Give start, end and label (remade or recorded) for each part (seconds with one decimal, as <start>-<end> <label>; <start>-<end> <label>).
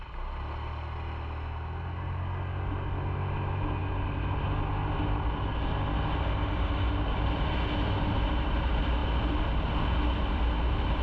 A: 0.0-11.0 recorded